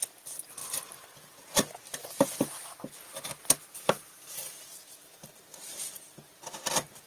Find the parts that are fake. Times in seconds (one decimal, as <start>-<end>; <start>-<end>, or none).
3.6-5.8